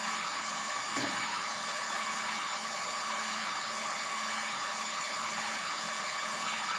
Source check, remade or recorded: remade